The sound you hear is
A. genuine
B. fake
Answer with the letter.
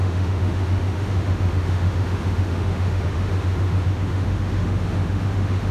B